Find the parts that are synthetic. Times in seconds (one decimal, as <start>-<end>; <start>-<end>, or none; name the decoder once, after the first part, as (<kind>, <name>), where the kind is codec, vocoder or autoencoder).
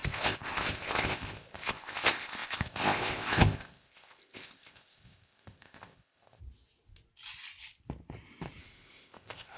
0.0-6.4 (codec, ZipCodec); 8.6-9.6